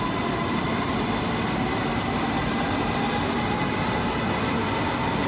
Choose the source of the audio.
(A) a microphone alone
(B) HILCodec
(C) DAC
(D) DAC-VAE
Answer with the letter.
A